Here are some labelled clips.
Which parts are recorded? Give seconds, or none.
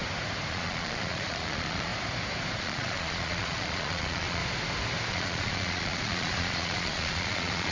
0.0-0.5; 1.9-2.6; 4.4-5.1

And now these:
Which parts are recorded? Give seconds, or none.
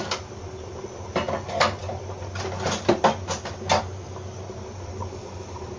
0.0-5.8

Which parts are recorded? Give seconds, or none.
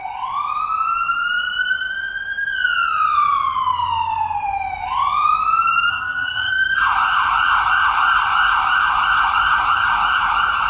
0.0-5.9; 6.5-10.7